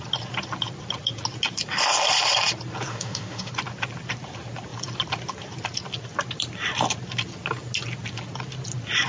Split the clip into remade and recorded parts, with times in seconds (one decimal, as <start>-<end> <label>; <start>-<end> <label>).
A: 0.0-2.9 recorded; 2.9-3.5 remade; 3.5-9.1 recorded